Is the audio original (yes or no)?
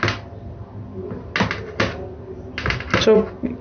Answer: yes